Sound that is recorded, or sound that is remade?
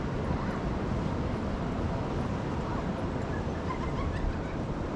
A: recorded